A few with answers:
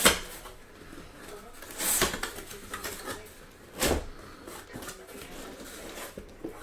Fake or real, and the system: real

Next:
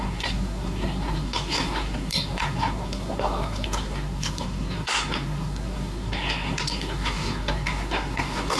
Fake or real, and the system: fake, codec, SNAC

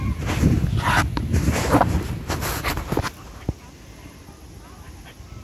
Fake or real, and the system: real